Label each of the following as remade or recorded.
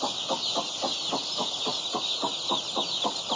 recorded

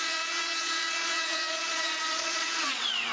remade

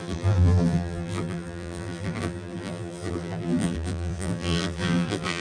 remade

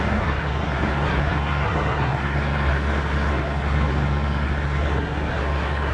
remade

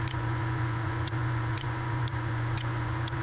remade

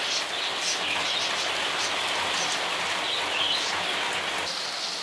recorded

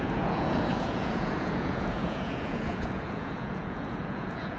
remade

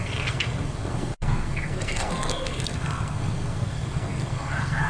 remade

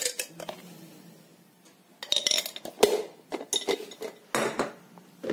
recorded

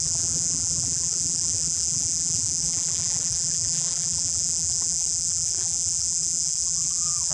remade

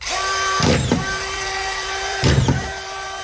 remade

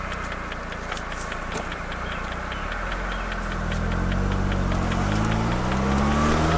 recorded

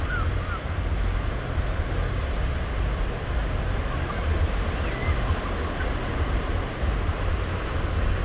recorded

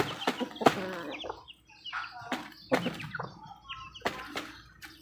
recorded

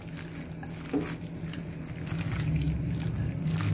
recorded